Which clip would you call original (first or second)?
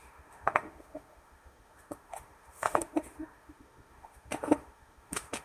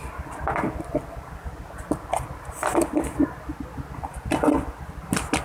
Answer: second